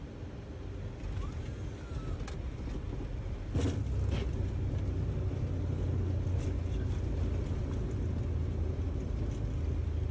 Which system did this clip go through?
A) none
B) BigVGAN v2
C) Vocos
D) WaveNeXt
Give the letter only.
A